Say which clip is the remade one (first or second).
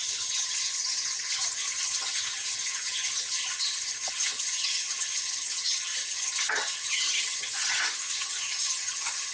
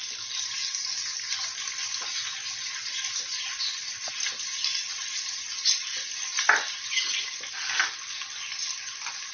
first